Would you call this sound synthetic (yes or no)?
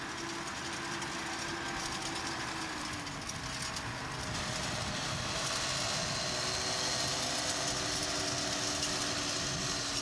no